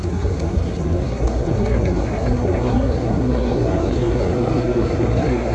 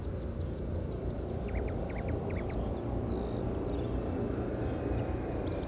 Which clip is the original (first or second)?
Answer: second